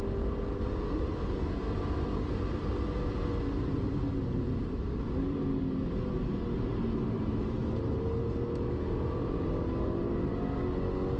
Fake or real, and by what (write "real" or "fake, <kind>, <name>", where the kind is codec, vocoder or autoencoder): real